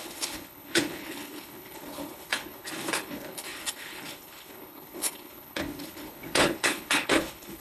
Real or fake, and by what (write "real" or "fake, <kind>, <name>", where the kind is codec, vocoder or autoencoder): fake, codec, HILCodec